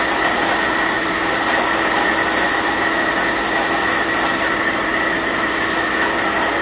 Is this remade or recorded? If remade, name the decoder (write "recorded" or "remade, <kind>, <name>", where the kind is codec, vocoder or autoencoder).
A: recorded